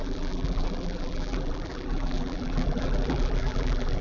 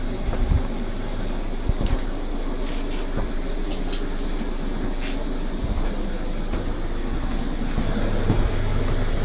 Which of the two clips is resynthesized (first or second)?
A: first